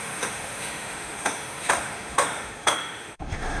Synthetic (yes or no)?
yes